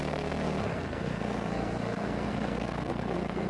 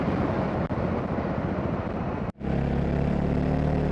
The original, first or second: second